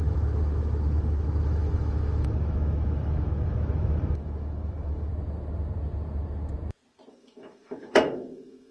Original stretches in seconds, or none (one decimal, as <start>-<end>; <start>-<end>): 5.1-7.1